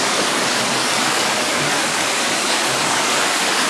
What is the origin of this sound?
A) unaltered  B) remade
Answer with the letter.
B